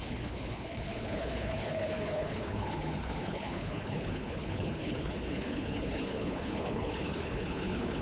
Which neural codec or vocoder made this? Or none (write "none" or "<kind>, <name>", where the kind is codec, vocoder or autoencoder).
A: codec, HILCodec